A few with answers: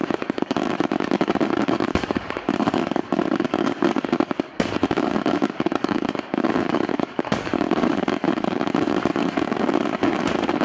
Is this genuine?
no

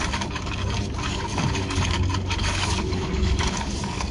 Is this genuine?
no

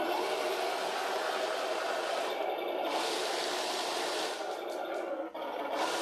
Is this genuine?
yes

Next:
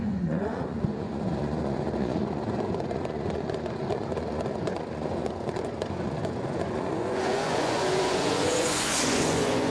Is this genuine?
no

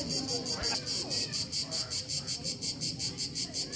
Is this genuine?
yes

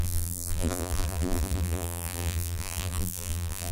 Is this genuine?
no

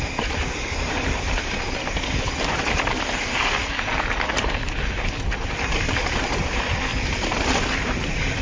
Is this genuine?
no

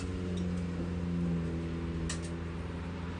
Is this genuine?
yes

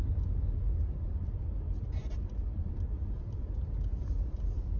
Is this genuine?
yes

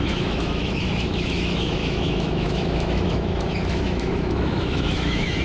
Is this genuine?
no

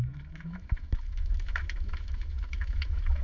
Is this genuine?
no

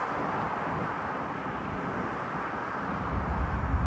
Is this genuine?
yes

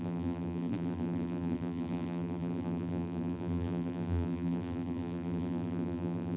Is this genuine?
no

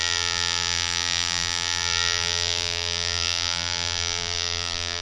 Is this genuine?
no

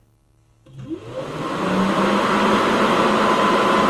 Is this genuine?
yes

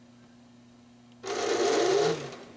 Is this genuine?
yes